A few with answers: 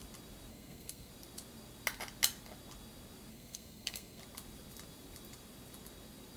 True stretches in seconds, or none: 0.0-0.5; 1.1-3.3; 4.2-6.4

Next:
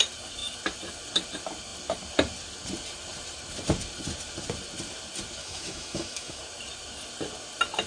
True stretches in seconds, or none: 0.0-5.4; 6.4-7.9

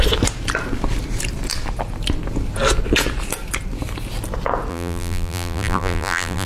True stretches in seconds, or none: 0.0-4.7

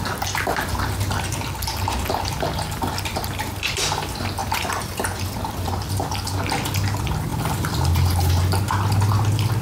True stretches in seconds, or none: 0.0-9.6

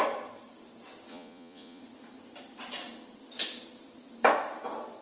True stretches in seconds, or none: 0.0-1.1; 1.8-5.0